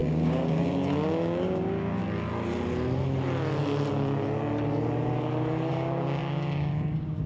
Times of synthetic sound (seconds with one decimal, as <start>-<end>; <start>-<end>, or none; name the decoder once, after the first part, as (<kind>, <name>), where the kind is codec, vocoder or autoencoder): 0.0-2.0 (codec, DAC); 5.7-7.3